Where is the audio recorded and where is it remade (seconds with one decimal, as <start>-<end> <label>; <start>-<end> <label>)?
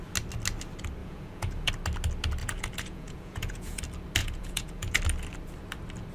0.0-1.0 recorded; 1.0-1.7 remade; 1.7-2.4 recorded; 2.4-3.8 remade; 3.8-4.2 recorded; 4.2-5.0 remade; 5.0-6.1 recorded